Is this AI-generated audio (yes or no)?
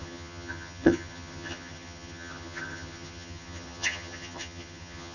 yes